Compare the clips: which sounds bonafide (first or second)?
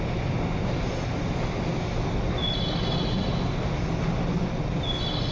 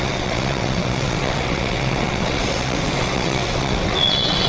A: first